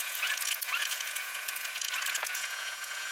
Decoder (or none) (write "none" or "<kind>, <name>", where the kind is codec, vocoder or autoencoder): vocoder, Vocos